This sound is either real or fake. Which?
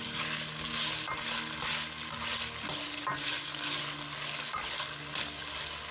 real